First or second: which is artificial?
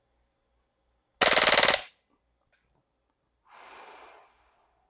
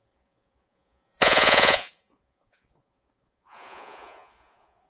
second